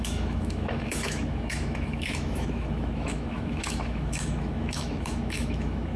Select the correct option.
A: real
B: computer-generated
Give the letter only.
B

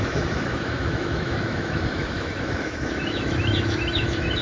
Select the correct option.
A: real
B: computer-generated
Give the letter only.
B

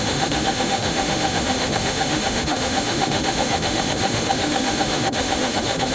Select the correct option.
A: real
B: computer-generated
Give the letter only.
B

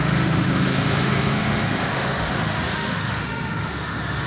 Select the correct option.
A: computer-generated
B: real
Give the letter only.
A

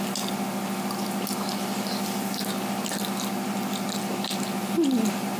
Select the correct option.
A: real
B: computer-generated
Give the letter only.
A